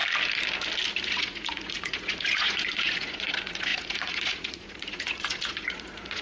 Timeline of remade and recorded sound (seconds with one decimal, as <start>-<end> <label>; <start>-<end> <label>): 0.0-1.0 recorded; 1.0-6.2 remade